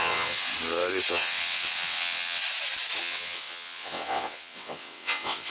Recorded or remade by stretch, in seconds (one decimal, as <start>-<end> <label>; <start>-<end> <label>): 0.0-0.5 remade; 0.5-1.1 recorded; 1.1-2.4 remade; 2.4-3.0 recorded; 3.0-5.5 remade